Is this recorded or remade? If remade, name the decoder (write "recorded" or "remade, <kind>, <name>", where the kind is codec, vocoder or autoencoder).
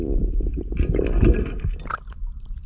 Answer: recorded